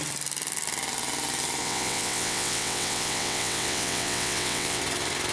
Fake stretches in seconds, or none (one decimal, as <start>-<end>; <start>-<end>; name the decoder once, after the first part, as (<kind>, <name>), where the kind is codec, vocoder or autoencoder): 1.6-4.8 (vocoder, WaveNeXt)